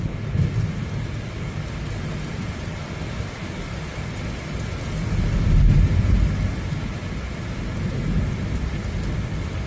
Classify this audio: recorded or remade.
recorded